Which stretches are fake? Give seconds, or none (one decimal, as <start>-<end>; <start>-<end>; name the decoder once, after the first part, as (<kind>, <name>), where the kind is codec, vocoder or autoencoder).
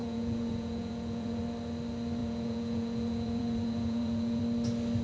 0.0-1.4 (vocoder, Vocos); 2.2-4.4